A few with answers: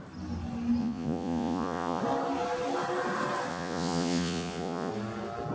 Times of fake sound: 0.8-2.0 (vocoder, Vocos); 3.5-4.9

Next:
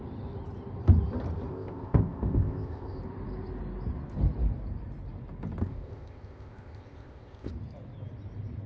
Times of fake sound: 1.5-3.0 (codec, ZipCodec); 5.6-7.5

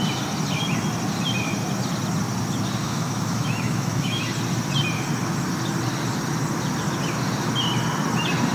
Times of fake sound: 2.8-4.2 (autoencoder, DAC-VAE)

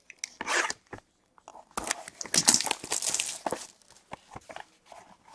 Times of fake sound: none

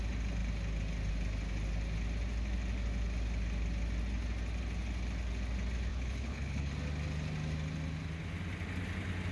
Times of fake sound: 5.9-6.7 (codec, HILCodec)

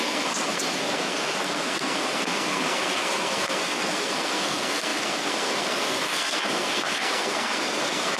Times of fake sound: 0.0-8.2 (codec, SNAC)

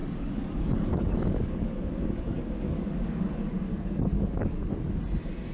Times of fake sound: 0.0-3.3 (codec, DAC); 3.7-4.7

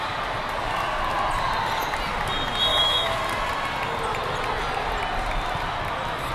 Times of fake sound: 2.7-3.2 (autoencoder, DAC-VAE)